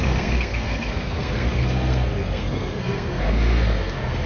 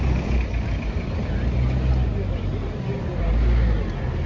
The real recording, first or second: second